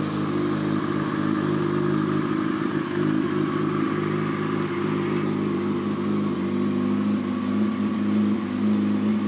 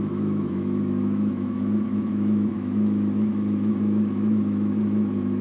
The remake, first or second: second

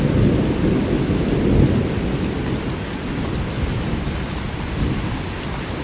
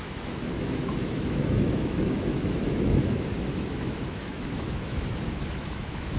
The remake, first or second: second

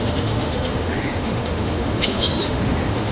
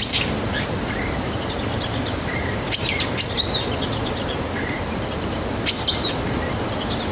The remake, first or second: first